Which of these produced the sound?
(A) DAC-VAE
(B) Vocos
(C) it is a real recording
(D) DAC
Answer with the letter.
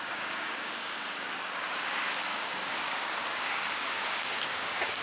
D